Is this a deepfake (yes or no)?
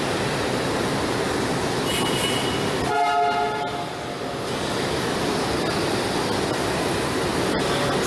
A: no